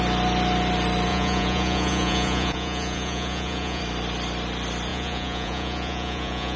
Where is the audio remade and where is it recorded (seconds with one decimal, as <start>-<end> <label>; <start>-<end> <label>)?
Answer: 0.0-1.1 recorded; 1.1-3.8 remade; 3.8-4.9 recorded; 4.9-6.6 remade